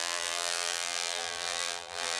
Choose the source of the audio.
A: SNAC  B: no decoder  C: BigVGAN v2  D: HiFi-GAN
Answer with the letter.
C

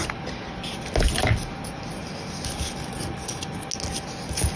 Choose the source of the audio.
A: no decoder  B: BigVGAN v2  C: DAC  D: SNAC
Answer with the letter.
A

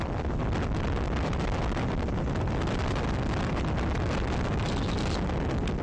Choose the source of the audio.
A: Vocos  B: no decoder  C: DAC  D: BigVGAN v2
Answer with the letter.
D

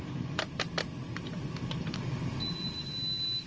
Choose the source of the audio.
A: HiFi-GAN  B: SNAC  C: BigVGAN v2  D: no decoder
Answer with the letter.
C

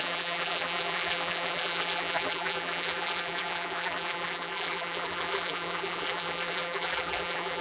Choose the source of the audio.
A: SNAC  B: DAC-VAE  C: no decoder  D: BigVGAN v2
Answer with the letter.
D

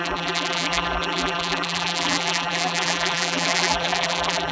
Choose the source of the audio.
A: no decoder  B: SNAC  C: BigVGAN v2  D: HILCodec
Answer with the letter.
C